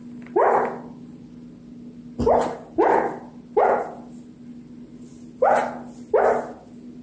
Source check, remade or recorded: recorded